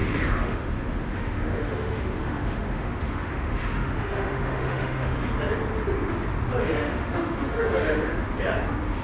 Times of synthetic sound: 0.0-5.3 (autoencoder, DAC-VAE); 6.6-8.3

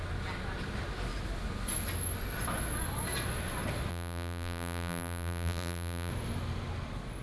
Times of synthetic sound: 3.9-6.1 (vocoder, BigVGAN v2)

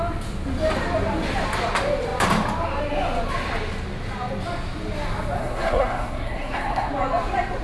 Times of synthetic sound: 5.4-6.9 (codec, SNAC)

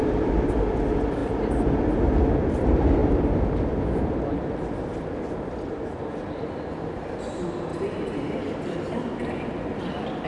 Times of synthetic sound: 1.2-2.1 (vocoder, BigVGAN v2); 3.0-7.2; 7.7-8.3

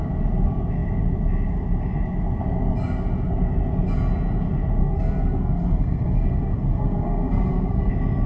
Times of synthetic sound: 4.8-7.9 (codec, SNAC)